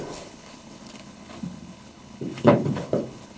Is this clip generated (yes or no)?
yes